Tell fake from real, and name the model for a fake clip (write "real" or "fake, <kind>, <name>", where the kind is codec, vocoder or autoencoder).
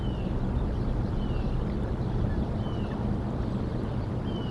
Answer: real